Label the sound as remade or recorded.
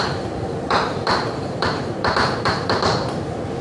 remade